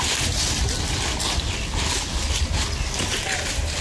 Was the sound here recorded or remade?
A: recorded